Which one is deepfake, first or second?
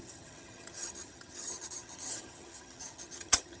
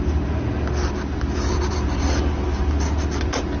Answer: first